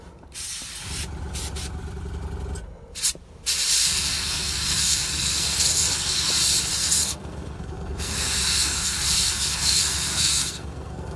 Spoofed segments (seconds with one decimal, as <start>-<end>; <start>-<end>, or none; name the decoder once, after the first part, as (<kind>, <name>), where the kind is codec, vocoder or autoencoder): 3.8-6.3 (codec, SNAC); 6.7-11.2